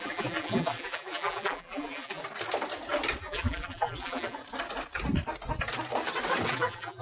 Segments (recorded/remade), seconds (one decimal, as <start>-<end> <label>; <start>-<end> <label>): 0.0-2.2 remade; 2.2-3.2 recorded; 3.2-4.4 remade; 4.4-6.5 recorded; 6.5-7.0 remade